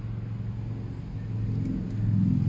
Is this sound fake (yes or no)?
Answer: no